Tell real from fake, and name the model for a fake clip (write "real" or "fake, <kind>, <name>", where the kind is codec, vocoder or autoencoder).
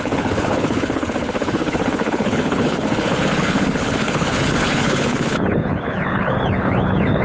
fake, codec, HILCodec